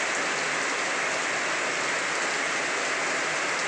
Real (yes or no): yes